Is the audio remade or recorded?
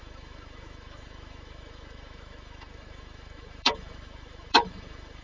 remade